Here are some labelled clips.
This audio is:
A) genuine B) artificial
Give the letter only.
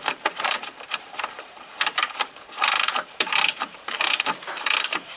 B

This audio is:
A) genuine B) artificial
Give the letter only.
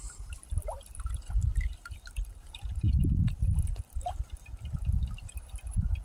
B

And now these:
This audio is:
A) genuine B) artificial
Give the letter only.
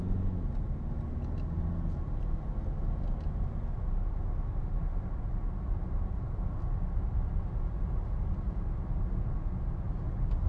A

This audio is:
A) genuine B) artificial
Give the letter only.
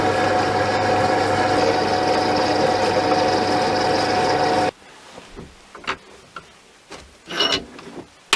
A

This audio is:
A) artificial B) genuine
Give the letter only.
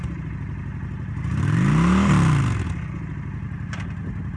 B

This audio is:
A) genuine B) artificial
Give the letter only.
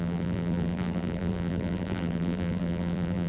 B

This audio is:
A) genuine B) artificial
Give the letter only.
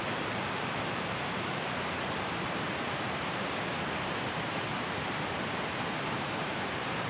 B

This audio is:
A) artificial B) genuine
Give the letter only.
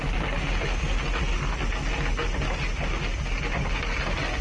B